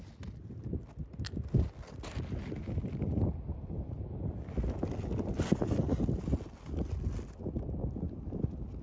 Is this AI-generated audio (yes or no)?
no